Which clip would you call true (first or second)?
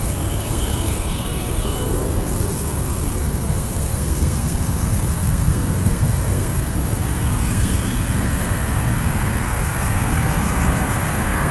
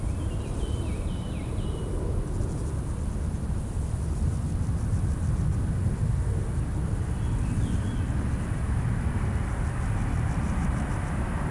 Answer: second